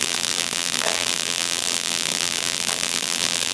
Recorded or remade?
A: remade